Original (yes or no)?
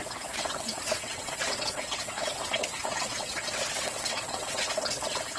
no